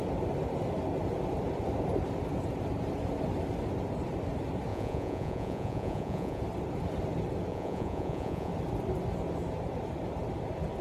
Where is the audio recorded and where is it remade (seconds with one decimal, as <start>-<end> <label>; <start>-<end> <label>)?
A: 0.0-4.7 recorded; 4.7-6.4 remade; 6.4-7.5 recorded; 7.5-8.5 remade; 8.5-10.8 recorded